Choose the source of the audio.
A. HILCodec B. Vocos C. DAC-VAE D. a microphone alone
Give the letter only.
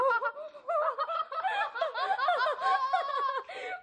D